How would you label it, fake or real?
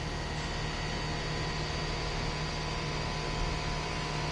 real